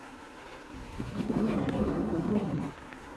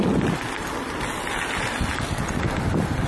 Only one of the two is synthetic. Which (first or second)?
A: first